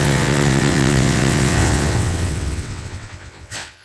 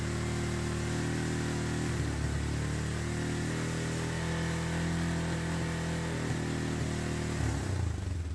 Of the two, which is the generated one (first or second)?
first